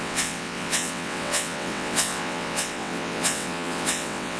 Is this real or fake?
fake